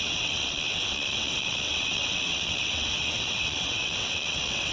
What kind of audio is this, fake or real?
fake